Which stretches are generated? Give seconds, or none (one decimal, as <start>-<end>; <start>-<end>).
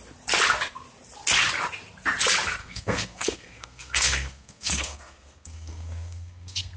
2.6-6.8